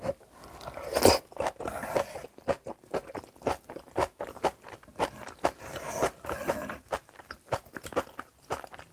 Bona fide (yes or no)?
yes